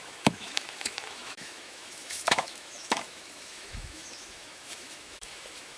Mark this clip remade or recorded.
remade